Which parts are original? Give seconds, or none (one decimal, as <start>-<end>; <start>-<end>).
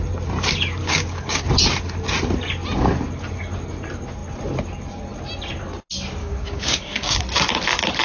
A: 0.0-0.8; 1.4-6.2; 7.2-8.0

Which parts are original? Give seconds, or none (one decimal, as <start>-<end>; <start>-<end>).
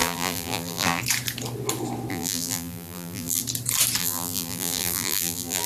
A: 1.0-2.1; 3.4-4.0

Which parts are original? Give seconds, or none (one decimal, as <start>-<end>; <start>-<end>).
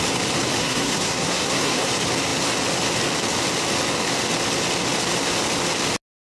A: 0.0-0.6; 1.9-6.2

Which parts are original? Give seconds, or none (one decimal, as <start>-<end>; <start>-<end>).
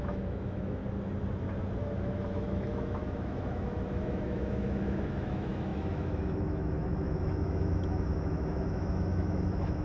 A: 0.8-1.8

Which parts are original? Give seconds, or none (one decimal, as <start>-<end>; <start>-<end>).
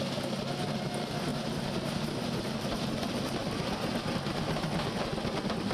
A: 0.0-1.3; 2.9-3.4; 4.4-5.7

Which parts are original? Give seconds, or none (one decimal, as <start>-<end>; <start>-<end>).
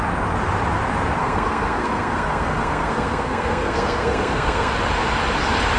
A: 0.0-1.2; 4.7-5.8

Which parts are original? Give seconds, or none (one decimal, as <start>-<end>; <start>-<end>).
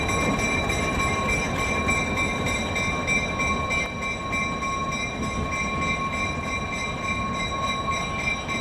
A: 0.0-8.6